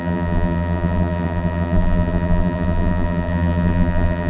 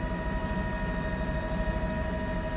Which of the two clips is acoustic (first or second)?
second